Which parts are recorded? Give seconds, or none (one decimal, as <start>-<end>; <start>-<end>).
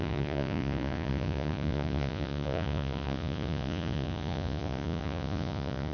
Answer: none